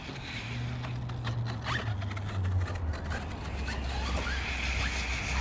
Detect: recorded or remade recorded